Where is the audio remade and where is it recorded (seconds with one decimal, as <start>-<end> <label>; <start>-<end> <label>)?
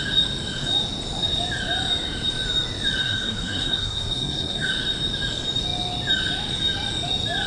0.0-3.0 recorded; 3.0-4.7 remade; 4.7-7.5 recorded